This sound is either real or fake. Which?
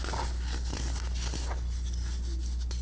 real